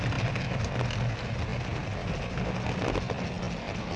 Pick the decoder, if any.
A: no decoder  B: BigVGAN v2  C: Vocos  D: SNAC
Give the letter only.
A